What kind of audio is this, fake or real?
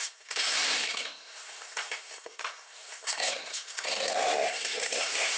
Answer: fake